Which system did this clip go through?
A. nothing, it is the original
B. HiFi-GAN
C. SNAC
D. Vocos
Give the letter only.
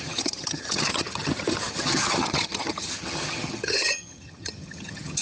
B